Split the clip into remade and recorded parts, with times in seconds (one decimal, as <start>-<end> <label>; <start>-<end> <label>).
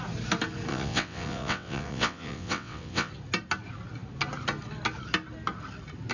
0.0-0.7 recorded; 0.7-3.1 remade; 3.1-6.1 recorded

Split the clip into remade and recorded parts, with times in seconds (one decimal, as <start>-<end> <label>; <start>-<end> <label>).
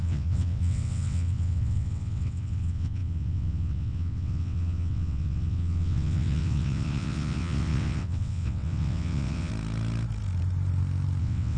0.0-9.5 remade; 9.5-11.2 recorded; 11.2-11.6 remade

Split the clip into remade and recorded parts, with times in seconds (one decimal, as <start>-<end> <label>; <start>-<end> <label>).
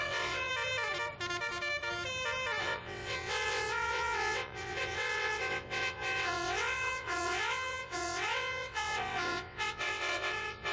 0.0-0.5 remade; 0.5-2.6 recorded; 2.6-10.7 remade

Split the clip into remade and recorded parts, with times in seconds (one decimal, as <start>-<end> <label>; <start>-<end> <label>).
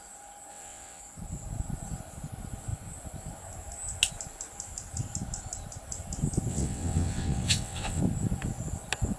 0.0-0.5 recorded; 0.5-1.0 remade; 1.0-6.5 recorded; 6.5-8.0 remade; 8.0-9.2 recorded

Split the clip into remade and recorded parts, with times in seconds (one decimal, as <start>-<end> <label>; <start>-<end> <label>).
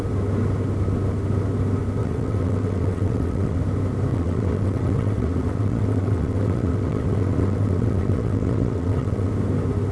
0.0-2.0 recorded; 2.0-3.6 remade; 3.6-4.1 recorded; 4.1-9.3 remade; 9.3-9.9 recorded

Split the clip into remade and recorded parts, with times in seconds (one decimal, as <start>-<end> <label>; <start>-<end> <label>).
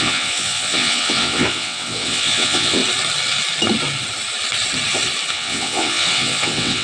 0.0-2.8 remade; 2.8-5.3 recorded; 5.3-6.8 remade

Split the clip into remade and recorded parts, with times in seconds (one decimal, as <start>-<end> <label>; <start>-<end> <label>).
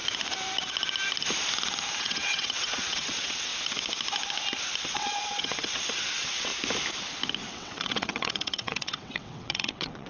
0.0-2.0 recorded; 2.0-3.5 remade; 3.5-4.8 recorded; 4.8-6.5 remade; 6.5-7.5 recorded; 7.5-10.1 remade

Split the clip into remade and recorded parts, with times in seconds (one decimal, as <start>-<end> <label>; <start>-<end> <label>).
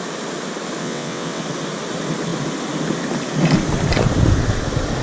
0.0-0.8 recorded; 0.8-1.4 remade; 1.4-5.0 recorded